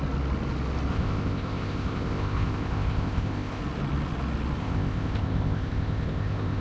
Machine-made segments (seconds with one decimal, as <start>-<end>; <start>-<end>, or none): 0.9-3.6; 4.6-6.6

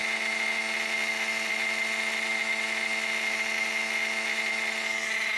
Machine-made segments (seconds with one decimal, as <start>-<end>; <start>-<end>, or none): none

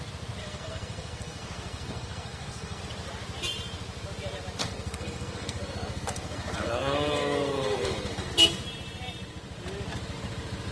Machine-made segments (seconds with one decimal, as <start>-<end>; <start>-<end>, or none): 0.4-2.8; 4.6-8.3